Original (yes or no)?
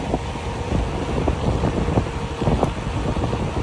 yes